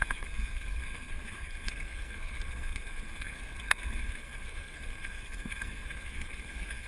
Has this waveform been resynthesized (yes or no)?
yes